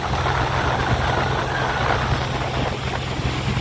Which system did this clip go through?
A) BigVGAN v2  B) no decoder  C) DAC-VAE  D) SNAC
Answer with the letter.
B